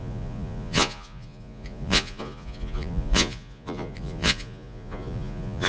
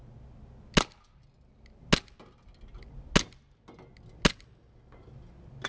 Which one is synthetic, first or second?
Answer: first